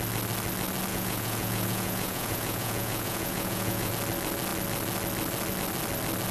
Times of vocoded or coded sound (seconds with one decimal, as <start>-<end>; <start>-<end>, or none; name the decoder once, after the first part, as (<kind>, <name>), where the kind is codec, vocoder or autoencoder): 0.9-3.9 (vocoder, Vocos)